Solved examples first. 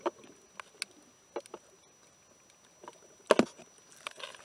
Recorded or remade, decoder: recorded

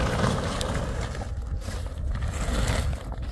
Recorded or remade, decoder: recorded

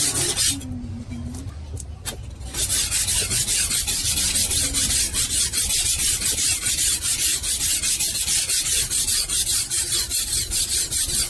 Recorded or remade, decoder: recorded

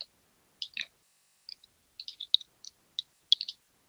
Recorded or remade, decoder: recorded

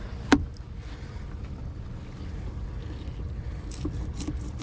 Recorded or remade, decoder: recorded